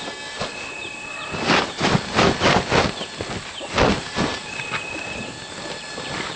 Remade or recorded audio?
recorded